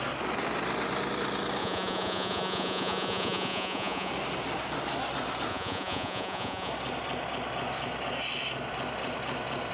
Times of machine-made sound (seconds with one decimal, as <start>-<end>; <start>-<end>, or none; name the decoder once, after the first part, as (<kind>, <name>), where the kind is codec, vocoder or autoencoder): 1.6-4.1 (vocoder, Vocos); 5.5-6.7